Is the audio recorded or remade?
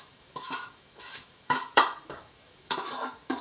remade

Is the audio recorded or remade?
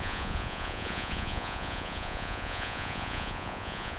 remade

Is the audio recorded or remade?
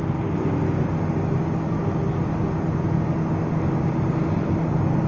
recorded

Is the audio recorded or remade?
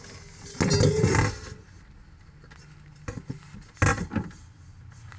recorded